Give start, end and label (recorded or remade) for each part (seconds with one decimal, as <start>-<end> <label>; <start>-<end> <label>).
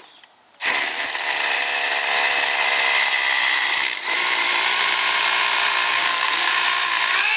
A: 0.0-5.9 recorded; 5.9-6.5 remade; 6.5-7.4 recorded